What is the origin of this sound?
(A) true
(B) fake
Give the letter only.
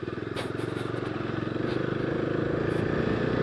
A